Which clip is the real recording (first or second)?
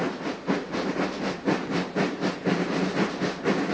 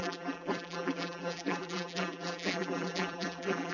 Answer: first